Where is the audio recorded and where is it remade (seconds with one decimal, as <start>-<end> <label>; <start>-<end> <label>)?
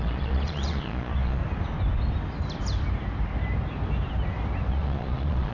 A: 0.0-1.4 remade; 1.4-4.7 recorded; 4.7-5.5 remade